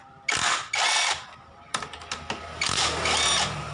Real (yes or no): yes